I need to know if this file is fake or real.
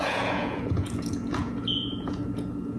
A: fake